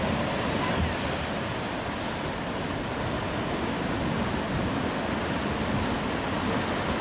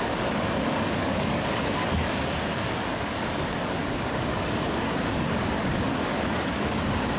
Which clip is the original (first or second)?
first